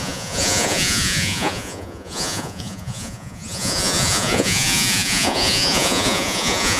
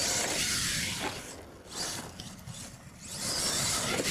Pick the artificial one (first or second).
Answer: first